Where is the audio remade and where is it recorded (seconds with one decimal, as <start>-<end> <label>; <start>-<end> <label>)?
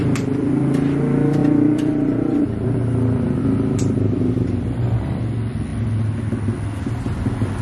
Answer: 0.0-0.5 remade; 0.5-1.4 recorded; 1.4-5.2 remade; 5.2-7.6 recorded